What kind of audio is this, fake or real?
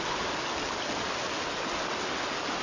real